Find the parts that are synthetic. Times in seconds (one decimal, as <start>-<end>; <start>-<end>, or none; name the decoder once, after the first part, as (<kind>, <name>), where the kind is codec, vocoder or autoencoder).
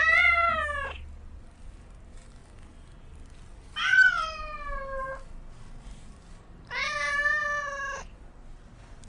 none